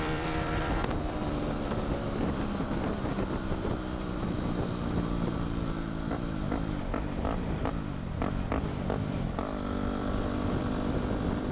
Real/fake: fake